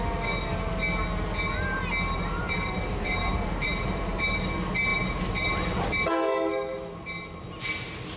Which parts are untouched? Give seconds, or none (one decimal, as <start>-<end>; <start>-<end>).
0.0-2.4; 4.2-8.2